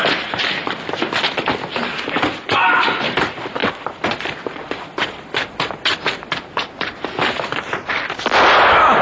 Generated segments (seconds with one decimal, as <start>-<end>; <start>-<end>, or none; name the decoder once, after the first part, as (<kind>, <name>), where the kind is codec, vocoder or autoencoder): none